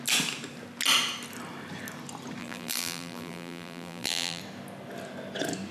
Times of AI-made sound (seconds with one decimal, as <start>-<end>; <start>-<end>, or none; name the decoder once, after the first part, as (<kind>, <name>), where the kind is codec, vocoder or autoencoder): 2.4-4.4 (vocoder, BigVGAN v2)

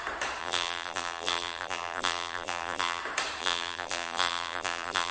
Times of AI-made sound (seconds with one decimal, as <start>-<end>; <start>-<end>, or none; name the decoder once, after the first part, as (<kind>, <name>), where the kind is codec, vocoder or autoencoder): 0.4-3.0 (vocoder, BigVGAN v2); 3.4-5.1

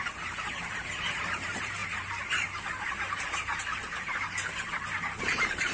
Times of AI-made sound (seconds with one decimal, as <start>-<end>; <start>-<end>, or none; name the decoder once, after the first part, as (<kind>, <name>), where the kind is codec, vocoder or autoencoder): 0.0-1.8 (vocoder, BigVGAN v2); 5.2-5.7